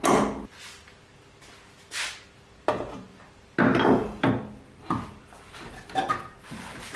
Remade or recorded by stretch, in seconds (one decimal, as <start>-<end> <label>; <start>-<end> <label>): 0.0-7.0 recorded